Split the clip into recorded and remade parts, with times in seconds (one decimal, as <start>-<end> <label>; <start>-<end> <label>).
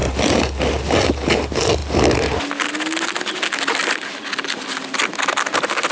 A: 0.0-5.9 recorded